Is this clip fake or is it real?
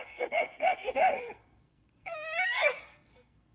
fake